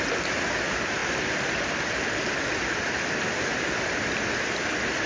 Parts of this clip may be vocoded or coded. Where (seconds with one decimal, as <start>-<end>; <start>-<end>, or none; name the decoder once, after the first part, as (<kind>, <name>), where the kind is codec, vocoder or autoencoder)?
none